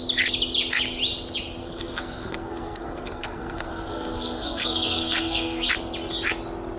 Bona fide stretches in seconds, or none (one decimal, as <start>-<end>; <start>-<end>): 0.0-1.6; 5.7-6.8